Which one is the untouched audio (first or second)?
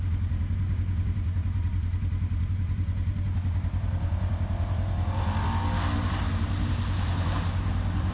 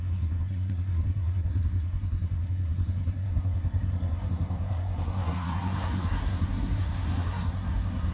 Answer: first